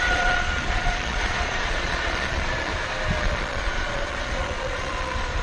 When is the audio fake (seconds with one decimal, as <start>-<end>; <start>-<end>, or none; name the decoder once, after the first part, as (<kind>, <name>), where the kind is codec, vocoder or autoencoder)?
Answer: 0.0-2.7 (vocoder, Vocos); 3.2-5.4